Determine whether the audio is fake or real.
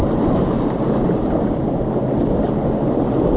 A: real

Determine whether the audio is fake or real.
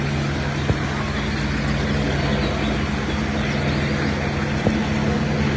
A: real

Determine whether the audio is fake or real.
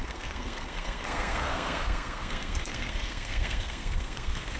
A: fake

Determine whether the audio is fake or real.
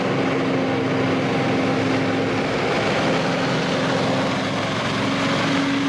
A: real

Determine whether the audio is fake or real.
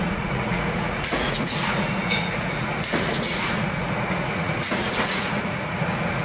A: fake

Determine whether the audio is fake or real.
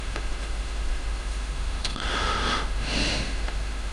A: fake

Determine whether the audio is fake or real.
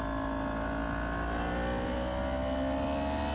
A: real